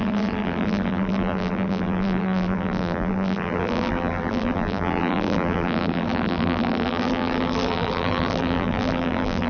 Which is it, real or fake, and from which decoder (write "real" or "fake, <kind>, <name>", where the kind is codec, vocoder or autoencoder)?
fake, vocoder, BigVGAN v2